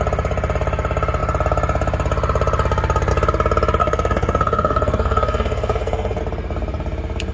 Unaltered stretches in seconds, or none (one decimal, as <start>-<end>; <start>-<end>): 0.0-3.8; 6.2-7.3